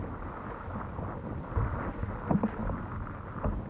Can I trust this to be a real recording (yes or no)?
yes